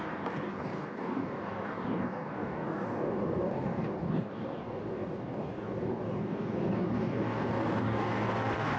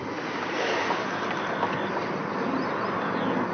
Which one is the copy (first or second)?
first